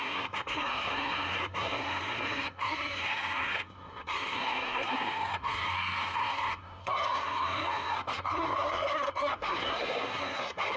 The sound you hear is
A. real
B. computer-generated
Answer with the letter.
B